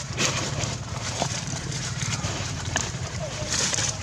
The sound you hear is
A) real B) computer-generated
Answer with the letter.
B